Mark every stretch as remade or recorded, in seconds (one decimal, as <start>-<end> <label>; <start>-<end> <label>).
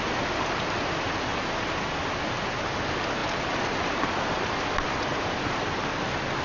0.0-3.2 recorded; 3.2-5.8 remade; 5.8-6.4 recorded